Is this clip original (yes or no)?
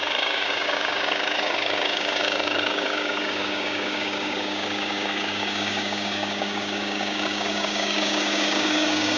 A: no